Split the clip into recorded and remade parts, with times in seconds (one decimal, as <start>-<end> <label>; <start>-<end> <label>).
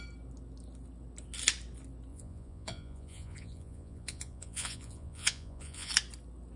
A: 0.0-2.1 recorded; 2.1-5.9 remade; 5.9-6.6 recorded